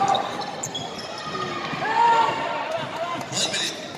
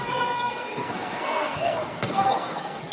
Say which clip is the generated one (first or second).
second